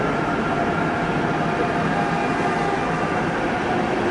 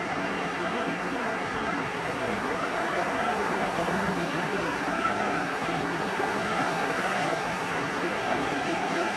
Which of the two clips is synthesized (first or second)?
second